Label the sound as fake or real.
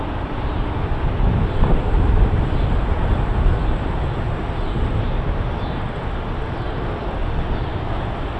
real